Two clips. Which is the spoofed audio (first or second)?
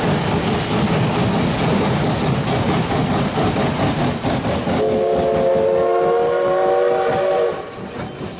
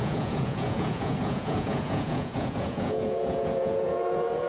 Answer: second